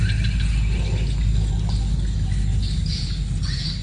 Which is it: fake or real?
real